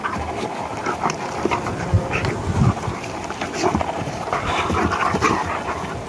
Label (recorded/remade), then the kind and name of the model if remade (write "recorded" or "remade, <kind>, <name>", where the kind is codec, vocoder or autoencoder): recorded